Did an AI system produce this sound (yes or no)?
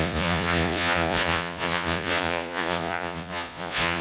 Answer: yes